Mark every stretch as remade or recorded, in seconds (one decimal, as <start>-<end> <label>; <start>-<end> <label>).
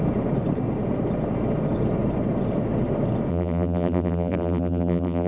0.0-3.3 recorded; 3.3-5.3 remade